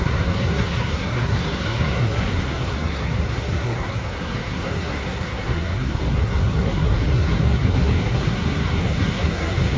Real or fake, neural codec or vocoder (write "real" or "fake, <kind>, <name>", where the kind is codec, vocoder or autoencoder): fake, codec, SNAC